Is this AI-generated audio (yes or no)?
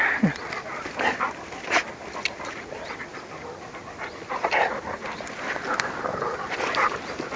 no